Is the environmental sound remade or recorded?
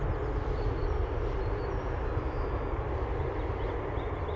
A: recorded